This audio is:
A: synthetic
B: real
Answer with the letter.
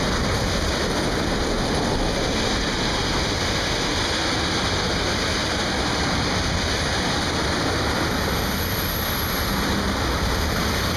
B